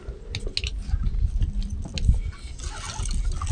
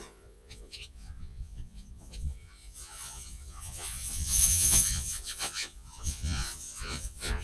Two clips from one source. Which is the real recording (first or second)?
first